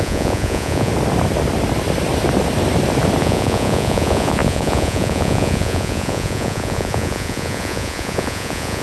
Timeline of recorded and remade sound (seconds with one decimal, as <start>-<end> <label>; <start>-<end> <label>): 0.0-0.9 remade; 0.9-3.2 recorded; 3.2-8.8 remade